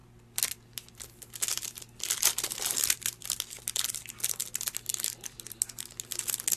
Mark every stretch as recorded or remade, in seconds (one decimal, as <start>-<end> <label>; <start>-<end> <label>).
0.0-6.6 recorded